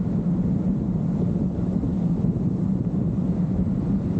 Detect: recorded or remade recorded